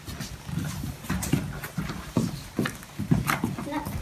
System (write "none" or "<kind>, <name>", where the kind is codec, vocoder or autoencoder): none